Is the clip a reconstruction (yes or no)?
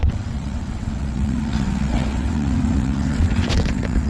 yes